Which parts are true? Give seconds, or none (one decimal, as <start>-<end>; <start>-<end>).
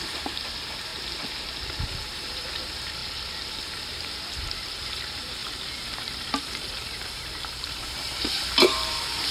0.9-2.0; 3.0-3.5